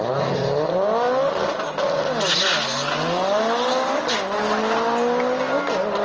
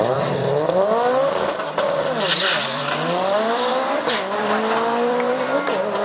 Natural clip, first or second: first